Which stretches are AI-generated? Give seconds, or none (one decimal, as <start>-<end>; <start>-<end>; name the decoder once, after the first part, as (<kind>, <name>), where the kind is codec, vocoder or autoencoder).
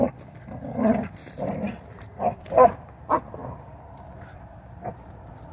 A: 1.2-2.9 (vocoder, BigVGAN v2); 3.4-5.5